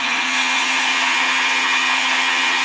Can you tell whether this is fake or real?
fake